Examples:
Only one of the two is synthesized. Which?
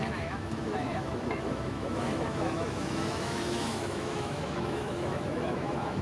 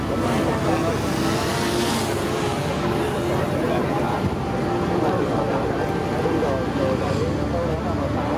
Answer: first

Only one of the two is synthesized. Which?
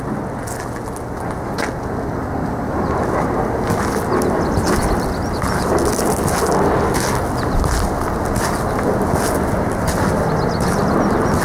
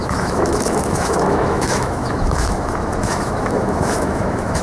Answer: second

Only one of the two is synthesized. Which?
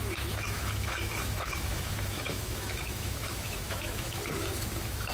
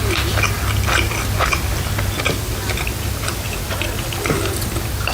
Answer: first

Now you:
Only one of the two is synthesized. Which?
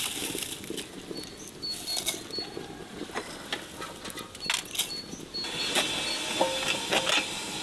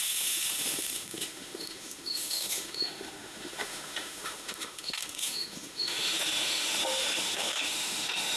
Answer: second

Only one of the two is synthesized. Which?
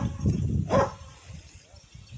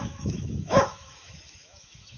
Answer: second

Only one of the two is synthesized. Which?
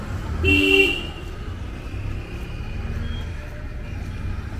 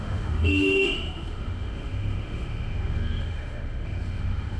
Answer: second